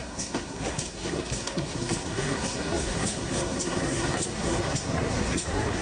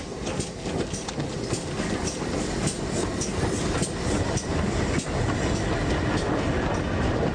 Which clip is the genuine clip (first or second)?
second